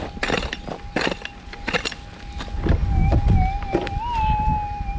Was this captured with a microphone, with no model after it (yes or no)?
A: yes